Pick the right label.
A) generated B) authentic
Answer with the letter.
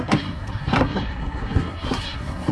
A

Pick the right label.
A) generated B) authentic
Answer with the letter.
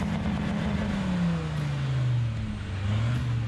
B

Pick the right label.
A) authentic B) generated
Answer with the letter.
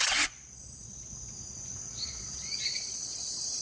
B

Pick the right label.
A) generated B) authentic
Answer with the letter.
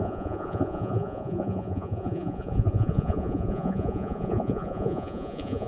A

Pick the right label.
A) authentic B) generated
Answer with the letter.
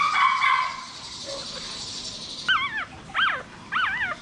A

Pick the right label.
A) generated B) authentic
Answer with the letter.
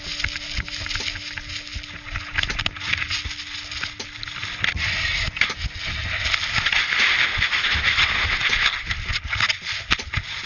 B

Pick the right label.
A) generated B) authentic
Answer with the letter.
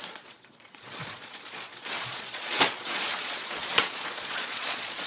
A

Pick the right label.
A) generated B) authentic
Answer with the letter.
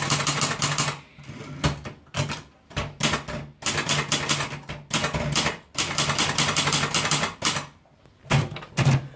B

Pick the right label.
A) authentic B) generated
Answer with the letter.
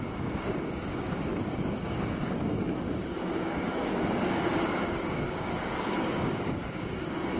B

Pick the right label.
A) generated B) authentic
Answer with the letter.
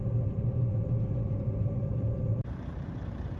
A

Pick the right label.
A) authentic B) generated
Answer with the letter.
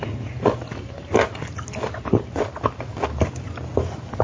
A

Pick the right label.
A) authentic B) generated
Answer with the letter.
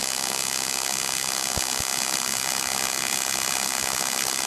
A